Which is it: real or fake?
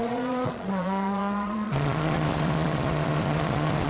fake